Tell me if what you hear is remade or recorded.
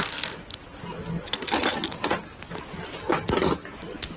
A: recorded